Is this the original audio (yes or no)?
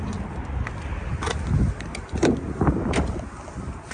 yes